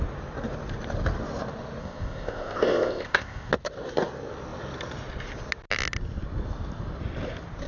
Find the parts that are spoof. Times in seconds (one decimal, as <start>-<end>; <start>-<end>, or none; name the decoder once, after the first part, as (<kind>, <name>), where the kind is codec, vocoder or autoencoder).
1.8-3.5 (codec, ZipCodec)